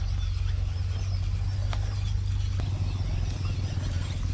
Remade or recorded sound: recorded